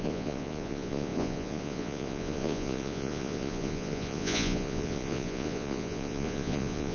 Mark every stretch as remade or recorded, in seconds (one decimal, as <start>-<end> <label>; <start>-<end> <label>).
0.0-6.9 remade